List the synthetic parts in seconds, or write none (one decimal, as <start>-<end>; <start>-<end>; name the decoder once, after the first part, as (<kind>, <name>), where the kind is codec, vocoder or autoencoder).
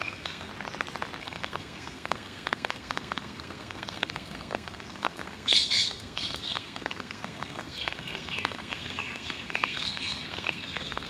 0.0-0.5 (codec, SNAC); 1.2-11.1